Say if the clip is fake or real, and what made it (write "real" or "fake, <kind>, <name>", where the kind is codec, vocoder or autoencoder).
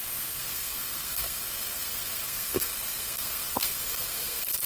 fake, codec, SNAC